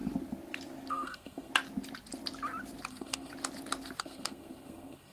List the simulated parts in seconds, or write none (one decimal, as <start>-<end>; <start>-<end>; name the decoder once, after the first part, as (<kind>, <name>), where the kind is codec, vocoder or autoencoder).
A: 0.9-1.5 (codec, SNAC); 2.9-3.3; 4.0-5.1